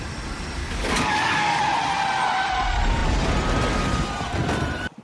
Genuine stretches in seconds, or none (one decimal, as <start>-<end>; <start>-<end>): 0.0-0.6; 1.6-5.0